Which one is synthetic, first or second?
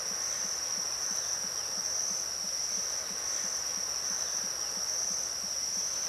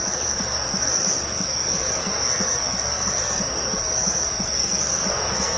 second